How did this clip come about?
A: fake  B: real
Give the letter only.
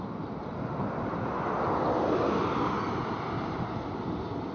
A